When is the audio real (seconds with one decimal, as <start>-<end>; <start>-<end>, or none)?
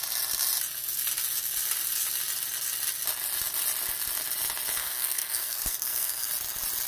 0.0-4.8; 6.3-6.9